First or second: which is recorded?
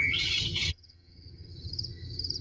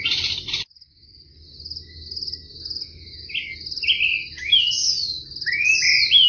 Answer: second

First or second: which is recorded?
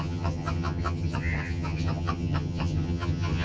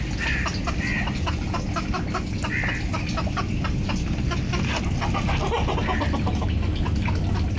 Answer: second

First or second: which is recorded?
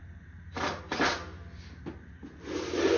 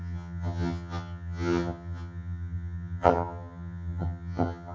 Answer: first